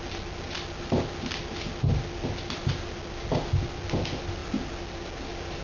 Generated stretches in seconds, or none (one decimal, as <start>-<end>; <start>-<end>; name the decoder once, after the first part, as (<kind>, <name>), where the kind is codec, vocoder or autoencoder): none